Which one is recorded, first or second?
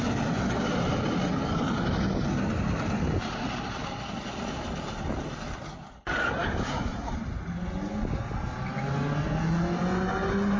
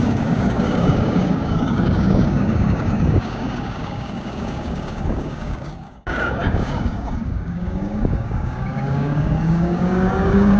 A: first